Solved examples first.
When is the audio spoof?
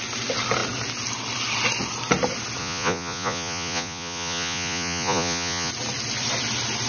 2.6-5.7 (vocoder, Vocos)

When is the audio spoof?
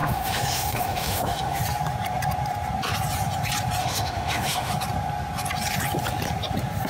0.0-1.6 (autoencoder, DAC-VAE); 3.8-4.7